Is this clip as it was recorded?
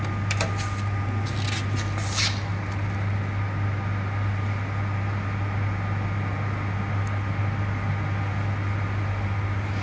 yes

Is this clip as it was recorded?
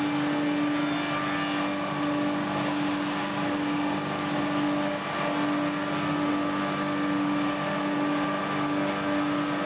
yes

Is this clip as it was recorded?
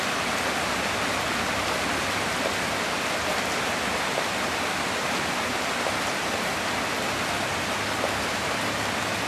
yes